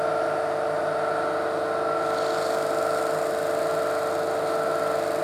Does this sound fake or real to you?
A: real